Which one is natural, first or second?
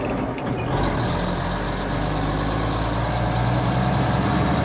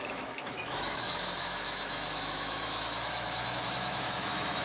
first